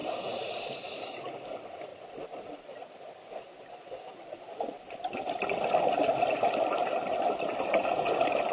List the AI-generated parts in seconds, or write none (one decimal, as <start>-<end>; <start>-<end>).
none